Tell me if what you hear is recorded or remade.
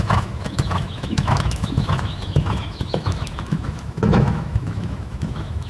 remade